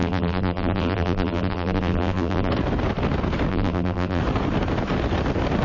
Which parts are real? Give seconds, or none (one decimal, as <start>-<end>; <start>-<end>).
2.5-3.5; 4.2-5.6